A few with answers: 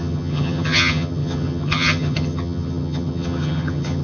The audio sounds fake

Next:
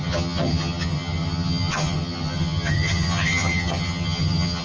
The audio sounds fake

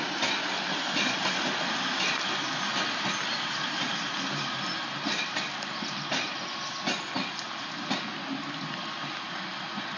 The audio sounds real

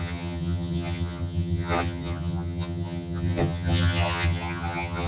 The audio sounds fake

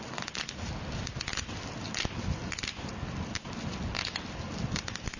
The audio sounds real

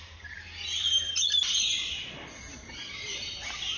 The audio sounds real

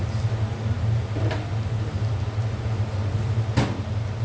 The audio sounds real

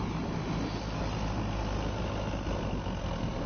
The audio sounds real